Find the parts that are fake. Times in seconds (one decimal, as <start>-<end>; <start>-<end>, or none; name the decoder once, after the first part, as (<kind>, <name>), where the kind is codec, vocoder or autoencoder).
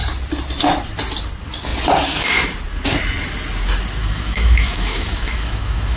4.0-6.0 (autoencoder, DAC-VAE)